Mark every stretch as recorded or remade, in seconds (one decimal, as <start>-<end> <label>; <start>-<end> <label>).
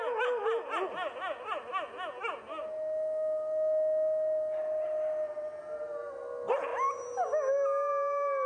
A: 0.0-8.5 recorded